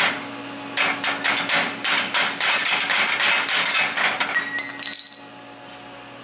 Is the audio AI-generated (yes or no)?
no